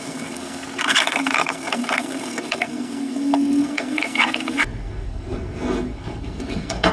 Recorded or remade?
remade